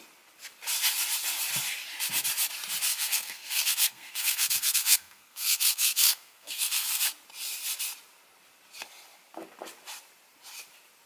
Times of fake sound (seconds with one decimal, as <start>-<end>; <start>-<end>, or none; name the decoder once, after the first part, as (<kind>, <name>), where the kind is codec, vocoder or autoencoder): 2.9-7.0 (codec, SNAC)